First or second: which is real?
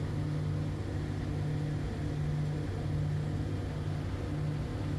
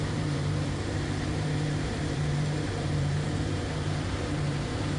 first